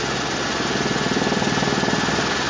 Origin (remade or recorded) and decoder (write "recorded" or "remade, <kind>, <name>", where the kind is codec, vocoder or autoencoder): recorded